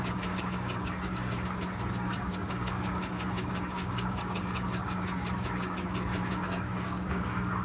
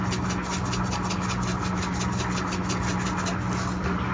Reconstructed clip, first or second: first